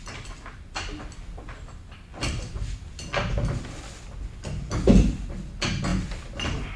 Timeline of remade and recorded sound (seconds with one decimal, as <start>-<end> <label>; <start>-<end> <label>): 0.0-6.8 recorded